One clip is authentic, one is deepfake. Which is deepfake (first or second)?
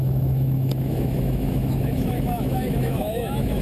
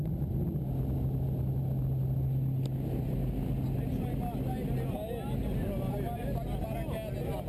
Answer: first